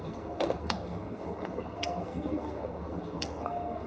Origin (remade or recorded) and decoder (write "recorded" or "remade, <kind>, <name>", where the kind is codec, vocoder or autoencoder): remade, codec, SNAC